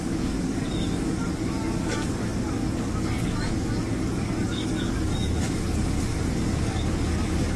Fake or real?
fake